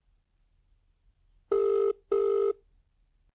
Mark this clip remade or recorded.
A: recorded